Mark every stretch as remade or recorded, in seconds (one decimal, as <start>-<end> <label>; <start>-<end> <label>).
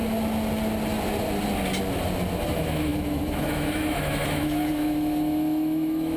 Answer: 0.0-2.5 recorded; 2.5-6.2 remade